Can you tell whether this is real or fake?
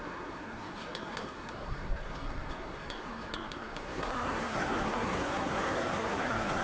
fake